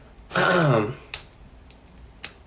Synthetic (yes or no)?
no